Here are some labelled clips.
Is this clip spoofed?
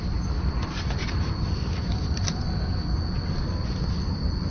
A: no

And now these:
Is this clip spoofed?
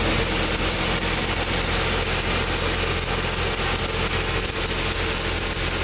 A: no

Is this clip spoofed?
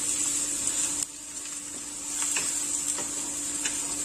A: no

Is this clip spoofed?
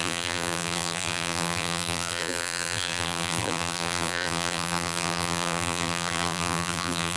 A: yes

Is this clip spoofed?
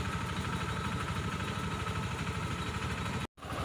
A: no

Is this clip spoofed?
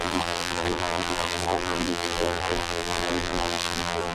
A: yes